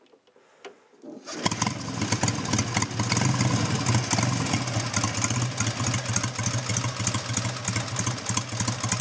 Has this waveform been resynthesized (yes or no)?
no